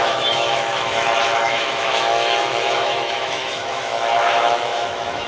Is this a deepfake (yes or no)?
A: yes